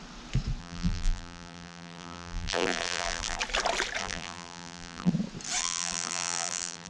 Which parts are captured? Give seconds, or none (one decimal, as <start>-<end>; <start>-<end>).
0.0-0.6; 3.4-4.0; 5.1-5.6